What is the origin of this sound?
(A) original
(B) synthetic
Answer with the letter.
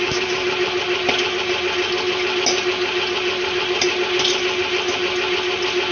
A